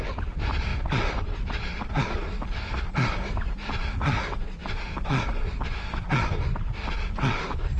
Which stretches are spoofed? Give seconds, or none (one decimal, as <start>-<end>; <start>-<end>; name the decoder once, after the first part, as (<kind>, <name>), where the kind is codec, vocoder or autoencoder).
0.7-2.0 (vocoder, BigVGAN v2); 4.6-6.0